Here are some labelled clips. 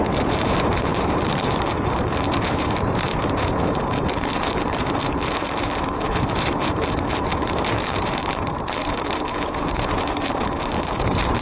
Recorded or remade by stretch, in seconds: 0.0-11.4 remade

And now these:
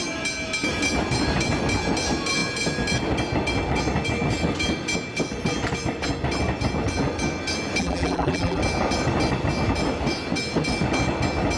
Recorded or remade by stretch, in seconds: 0.0-7.8 recorded; 7.8-8.6 remade; 8.6-11.6 recorded

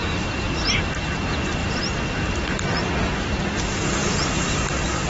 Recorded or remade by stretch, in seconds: 0.0-0.6 remade; 0.6-1.6 recorded; 1.6-2.8 remade; 2.8-4.0 recorded; 4.0-5.1 remade